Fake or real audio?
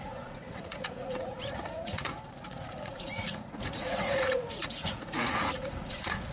fake